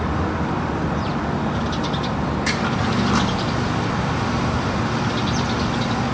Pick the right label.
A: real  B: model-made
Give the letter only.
B